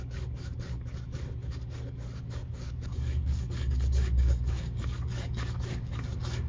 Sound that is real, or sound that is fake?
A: fake